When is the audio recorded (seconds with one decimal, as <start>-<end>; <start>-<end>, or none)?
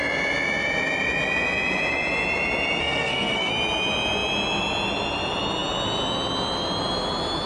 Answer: 0.0-2.8; 3.5-7.5